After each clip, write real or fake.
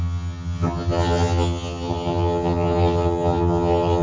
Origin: fake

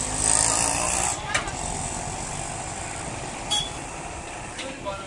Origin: real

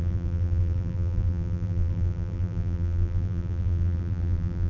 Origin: fake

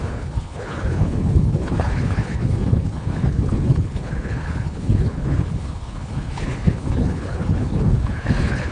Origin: fake